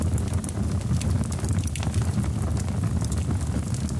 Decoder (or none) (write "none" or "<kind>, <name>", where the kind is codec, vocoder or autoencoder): none